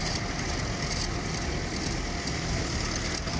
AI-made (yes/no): no